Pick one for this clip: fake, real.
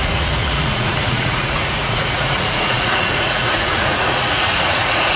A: fake